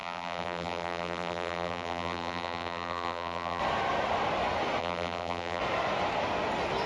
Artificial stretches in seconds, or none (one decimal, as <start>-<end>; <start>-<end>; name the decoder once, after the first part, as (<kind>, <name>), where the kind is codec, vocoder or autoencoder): 0.0-3.6 (vocoder, BigVGAN v2); 4.8-5.6